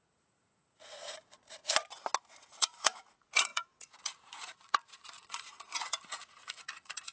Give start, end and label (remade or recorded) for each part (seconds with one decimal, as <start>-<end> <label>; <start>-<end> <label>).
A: 0.0-1.6 remade; 1.6-2.5 recorded; 2.5-7.1 remade